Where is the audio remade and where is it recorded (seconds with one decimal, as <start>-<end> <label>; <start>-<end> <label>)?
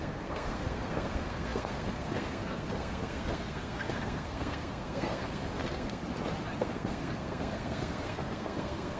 0.0-6.0 remade; 6.0-6.6 recorded; 6.6-9.0 remade